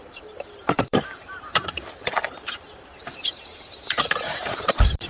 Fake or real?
fake